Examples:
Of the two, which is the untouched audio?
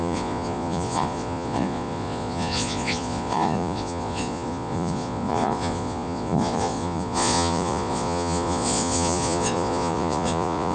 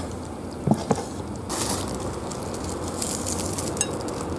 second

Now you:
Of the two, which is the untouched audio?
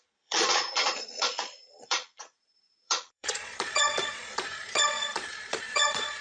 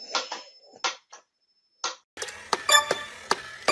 second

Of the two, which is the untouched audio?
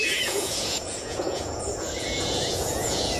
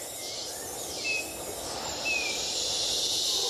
second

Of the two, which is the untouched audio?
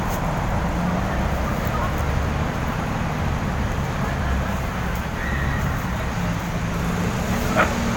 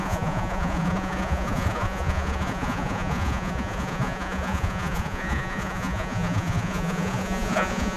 first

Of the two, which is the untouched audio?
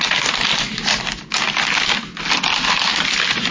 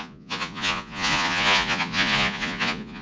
first